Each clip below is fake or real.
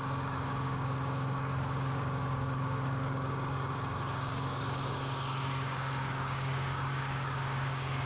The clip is fake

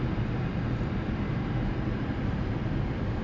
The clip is real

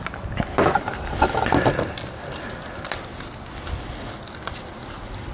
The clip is real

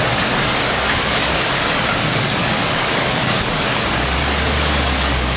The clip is fake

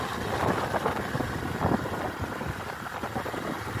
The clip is real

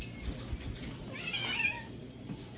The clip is real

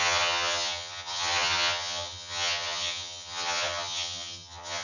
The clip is fake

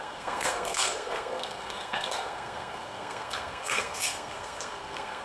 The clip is fake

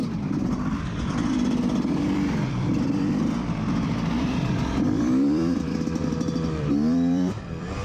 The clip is fake